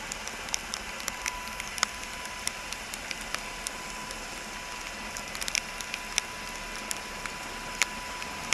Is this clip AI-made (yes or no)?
no